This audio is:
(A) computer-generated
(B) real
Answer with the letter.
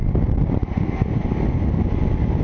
B